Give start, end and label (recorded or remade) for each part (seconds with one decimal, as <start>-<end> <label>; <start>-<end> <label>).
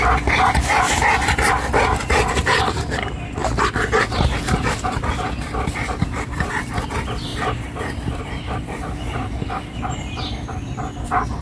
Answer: 0.0-7.3 recorded; 7.3-10.3 remade; 10.3-11.4 recorded